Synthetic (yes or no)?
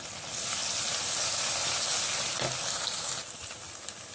no